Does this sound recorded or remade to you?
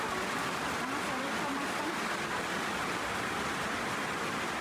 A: recorded